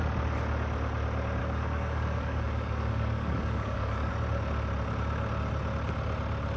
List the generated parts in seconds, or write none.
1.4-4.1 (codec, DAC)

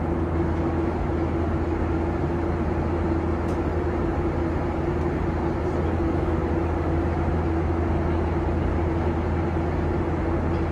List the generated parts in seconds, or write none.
5.9-6.5 (codec, DAC)

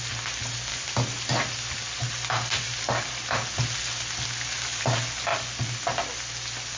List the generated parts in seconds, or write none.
none

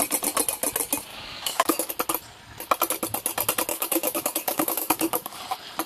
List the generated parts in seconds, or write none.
1.1-1.9 (codec, DAC); 3.7-5.4

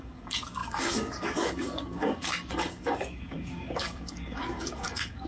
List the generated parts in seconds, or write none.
0.0-5.3 (codec, DAC)

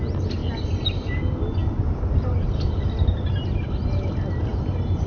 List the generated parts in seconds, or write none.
none